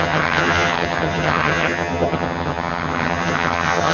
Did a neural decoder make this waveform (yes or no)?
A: yes